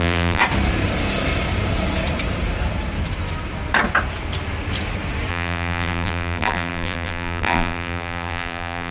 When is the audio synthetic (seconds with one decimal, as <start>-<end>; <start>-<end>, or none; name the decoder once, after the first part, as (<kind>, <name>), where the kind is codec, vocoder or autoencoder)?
0.0-0.4 (vocoder, BigVGAN v2); 5.3-8.9

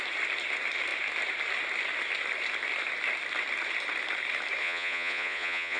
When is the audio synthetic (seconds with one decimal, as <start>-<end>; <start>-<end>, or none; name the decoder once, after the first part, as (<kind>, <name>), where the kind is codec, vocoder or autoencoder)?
4.6-5.8 (vocoder, Vocos)

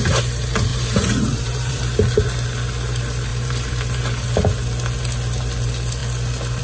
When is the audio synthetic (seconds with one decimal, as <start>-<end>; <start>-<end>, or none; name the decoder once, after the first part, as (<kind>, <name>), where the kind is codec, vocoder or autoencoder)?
0.7-1.8 (vocoder, BigVGAN v2); 3.3-4.0

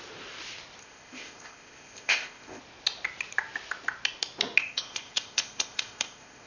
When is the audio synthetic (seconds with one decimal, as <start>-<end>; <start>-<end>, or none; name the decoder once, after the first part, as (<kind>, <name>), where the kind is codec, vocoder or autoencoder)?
0.8-2.6 (codec, ZipCodec); 4.6-6.5

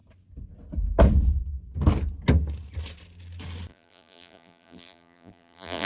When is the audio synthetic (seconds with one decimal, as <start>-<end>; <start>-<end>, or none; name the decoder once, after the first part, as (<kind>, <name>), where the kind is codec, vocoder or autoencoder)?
3.7-5.9 (vocoder, BigVGAN v2)